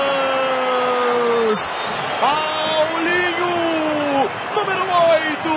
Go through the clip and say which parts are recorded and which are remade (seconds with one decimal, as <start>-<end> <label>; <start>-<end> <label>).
0.0-5.6 recorded